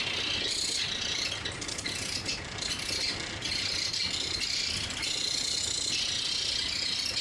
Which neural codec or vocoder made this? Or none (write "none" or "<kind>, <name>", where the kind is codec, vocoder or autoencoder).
none